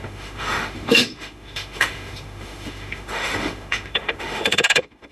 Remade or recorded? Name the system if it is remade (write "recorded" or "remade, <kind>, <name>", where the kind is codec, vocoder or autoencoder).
remade, autoencoder, DAC-VAE